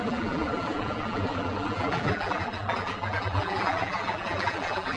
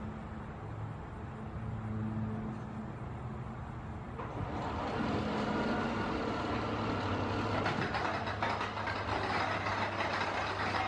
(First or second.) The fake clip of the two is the first